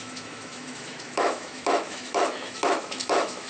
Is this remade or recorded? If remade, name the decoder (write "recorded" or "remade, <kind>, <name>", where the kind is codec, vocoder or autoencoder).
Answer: remade, autoencoder, DAC-VAE